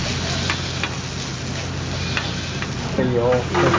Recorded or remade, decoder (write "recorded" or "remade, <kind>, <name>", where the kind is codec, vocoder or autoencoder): recorded